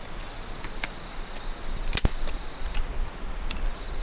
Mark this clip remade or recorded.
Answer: recorded